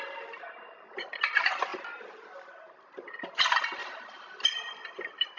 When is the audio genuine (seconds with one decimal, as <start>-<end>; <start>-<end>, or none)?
0.0-5.4